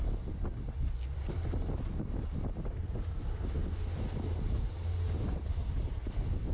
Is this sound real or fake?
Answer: real